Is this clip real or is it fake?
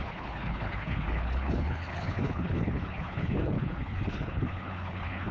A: fake